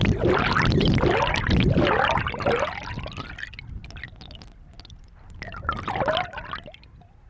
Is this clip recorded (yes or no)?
yes